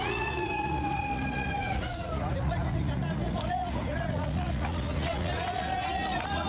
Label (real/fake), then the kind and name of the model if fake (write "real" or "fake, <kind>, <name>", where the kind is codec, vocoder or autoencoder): fake, vocoder, Vocos